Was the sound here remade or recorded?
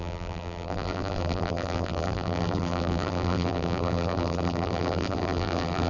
remade